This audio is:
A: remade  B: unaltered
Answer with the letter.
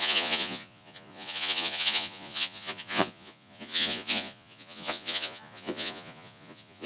A